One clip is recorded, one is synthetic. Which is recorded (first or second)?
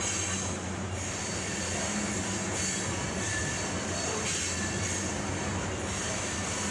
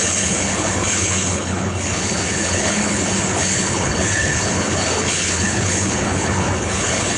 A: first